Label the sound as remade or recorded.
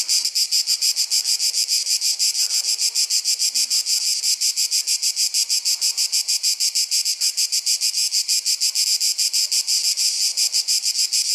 recorded